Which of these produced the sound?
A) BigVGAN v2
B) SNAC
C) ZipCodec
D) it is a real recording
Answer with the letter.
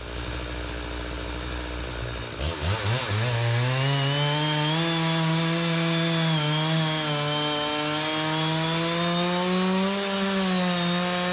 D